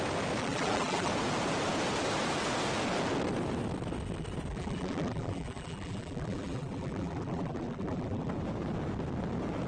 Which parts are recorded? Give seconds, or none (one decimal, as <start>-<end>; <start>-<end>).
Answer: 0.0-0.4; 1.1-4.5; 8.3-9.7